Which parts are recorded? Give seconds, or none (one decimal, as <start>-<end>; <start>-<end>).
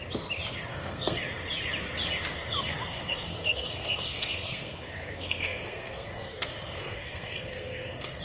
0.0-0.7; 1.2-2.9